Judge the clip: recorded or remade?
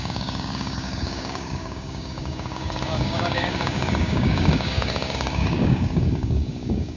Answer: remade